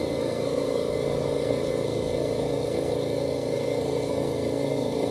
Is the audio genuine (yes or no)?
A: no